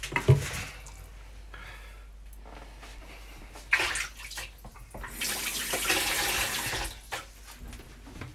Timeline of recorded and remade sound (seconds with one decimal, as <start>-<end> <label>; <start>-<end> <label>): 0.0-8.3 recorded